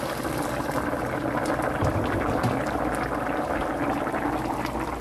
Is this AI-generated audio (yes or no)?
no